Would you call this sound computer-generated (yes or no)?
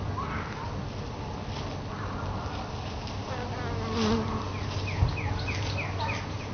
no